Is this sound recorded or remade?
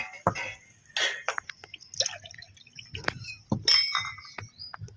recorded